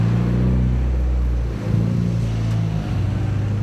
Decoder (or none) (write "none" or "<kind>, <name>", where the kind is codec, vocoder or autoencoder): none